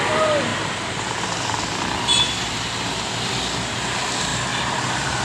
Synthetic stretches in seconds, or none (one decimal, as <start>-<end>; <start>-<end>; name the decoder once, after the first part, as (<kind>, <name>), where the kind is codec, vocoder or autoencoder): 0.5-1.1 (vocoder, BigVGAN v2)